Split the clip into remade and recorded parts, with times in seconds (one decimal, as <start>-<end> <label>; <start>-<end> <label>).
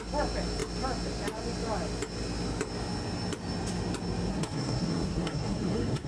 0.0-4.3 recorded; 4.3-6.1 remade